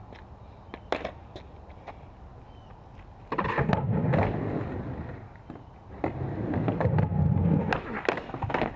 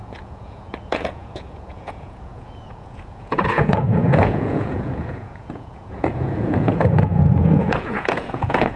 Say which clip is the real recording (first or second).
first